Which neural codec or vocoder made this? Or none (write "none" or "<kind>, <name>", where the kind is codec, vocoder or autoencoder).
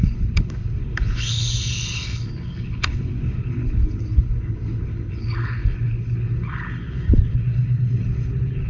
codec, HILCodec